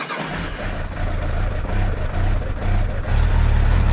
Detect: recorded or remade recorded